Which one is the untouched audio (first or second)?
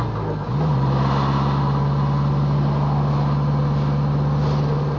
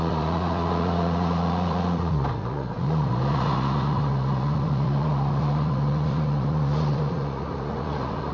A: first